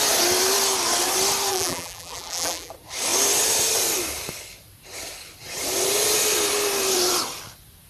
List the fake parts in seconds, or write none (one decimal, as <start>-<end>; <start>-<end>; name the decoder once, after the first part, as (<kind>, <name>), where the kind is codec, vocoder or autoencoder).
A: 1.5-2.7 (vocoder, BigVGAN v2)